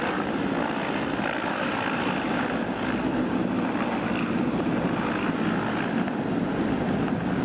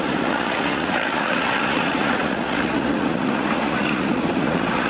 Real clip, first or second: first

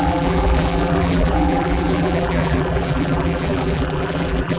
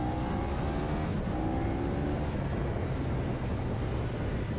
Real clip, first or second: second